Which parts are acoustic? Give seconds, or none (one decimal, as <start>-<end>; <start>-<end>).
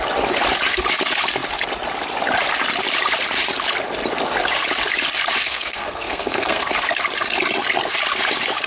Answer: 0.0-5.4; 6.7-8.7